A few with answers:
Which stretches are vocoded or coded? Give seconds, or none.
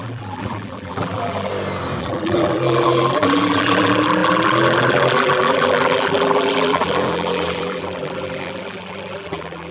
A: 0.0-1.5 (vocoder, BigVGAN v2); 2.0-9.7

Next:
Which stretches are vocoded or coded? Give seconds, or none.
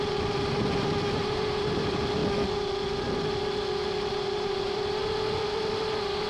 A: 0.0-2.2 (vocoder, BigVGAN v2); 4.1-5.0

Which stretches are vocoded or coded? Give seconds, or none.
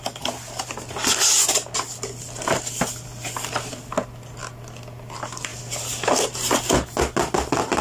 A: none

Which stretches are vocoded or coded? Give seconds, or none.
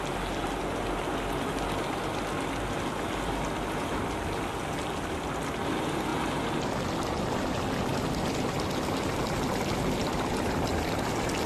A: none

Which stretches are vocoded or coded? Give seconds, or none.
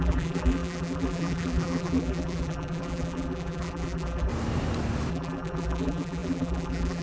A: 0.0-4.3 (vocoder, BigVGAN v2); 5.1-7.0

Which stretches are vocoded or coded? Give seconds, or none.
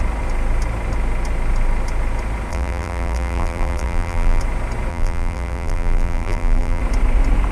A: 2.5-4.4 (vocoder, BigVGAN v2); 4.9-6.8